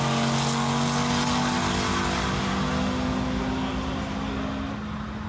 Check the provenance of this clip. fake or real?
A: real